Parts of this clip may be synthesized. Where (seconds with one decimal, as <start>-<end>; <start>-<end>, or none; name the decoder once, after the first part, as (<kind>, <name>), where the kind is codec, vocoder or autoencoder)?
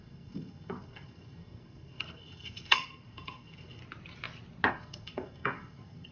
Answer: 0.0-3.8 (codec, SNAC); 4.7-6.1